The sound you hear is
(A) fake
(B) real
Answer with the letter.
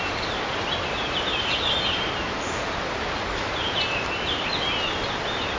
B